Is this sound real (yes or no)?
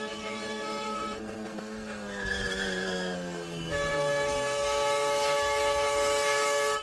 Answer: no